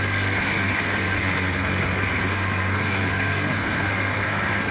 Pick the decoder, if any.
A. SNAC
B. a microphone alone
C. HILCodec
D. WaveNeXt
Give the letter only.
A